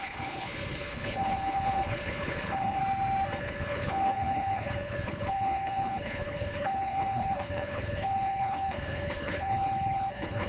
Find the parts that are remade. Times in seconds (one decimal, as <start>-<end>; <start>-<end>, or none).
0.0-2.8; 3.4-10.5